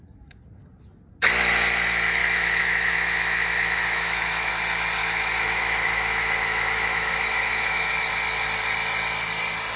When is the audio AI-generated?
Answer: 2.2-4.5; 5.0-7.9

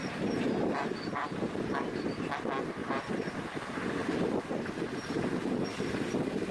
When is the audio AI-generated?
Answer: 0.0-1.4

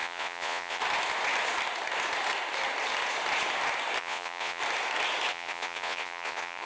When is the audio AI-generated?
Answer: 0.0-0.8; 4.0-4.6; 5.3-6.7

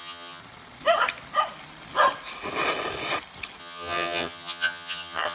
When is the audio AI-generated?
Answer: 0.0-0.4; 3.6-5.3

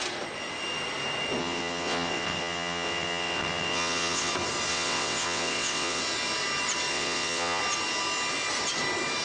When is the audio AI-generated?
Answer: 1.4-4.3; 4.7-6.0; 6.9-7.6